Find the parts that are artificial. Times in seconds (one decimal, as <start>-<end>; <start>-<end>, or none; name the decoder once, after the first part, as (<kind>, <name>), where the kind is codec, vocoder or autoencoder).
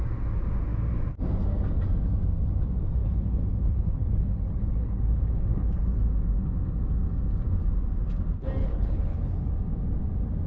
3.0-5.8 (codec, HILCodec); 8.6-9.5